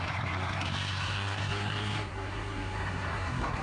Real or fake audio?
fake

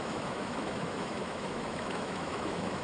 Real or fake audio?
fake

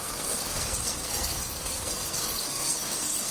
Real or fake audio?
fake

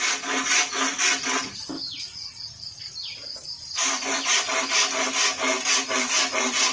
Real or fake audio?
real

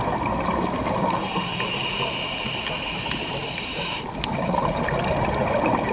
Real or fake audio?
real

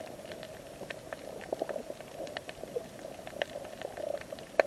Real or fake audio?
real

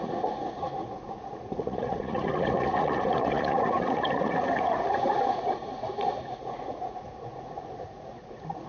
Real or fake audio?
fake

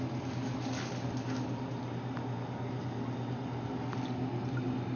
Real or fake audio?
real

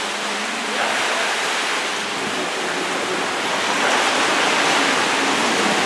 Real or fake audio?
real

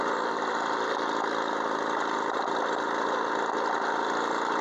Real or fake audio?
real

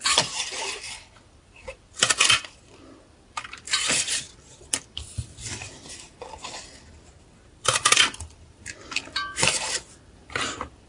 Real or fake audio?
fake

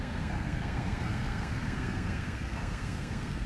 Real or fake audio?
fake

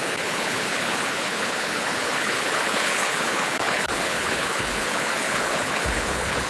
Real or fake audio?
fake